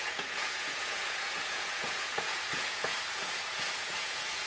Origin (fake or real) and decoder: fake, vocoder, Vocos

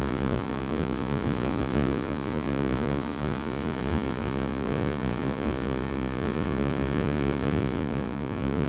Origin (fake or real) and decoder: fake, vocoder, Vocos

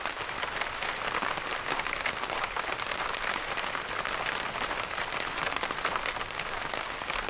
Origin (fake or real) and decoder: real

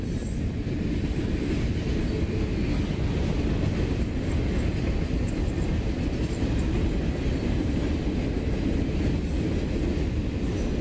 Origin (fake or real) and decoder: real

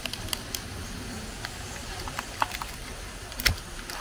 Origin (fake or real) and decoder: real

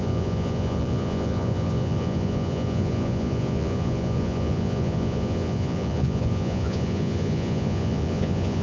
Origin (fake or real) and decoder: fake, vocoder, Vocos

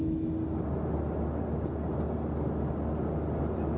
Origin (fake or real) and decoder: real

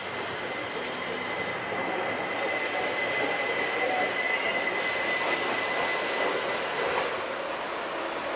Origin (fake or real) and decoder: real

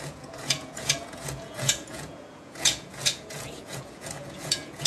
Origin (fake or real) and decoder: fake, vocoder, Vocos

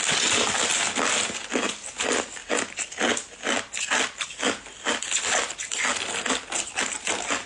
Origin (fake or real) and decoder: real